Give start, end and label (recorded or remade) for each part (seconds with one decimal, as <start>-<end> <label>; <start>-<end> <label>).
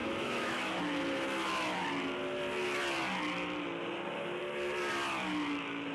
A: 0.0-0.8 remade; 0.8-5.9 recorded